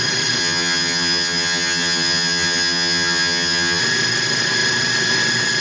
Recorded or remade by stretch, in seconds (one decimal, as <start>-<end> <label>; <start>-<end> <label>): 0.0-0.4 recorded; 0.4-3.8 remade; 3.8-5.6 recorded